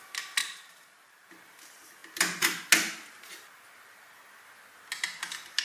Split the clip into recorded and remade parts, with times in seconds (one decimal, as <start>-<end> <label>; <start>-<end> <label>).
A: 0.0-0.4 recorded; 0.4-1.3 remade; 1.3-5.6 recorded